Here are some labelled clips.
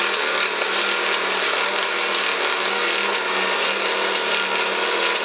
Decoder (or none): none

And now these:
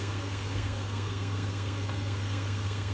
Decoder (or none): codec, SNAC